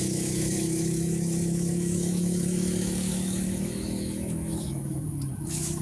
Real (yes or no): no